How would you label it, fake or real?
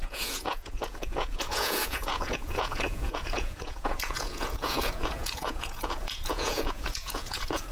fake